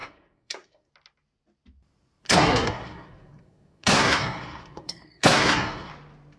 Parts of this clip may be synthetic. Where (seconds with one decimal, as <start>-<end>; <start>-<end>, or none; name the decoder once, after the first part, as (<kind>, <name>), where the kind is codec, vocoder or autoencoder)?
0.0-0.9 (codec, SNAC); 2.2-5.9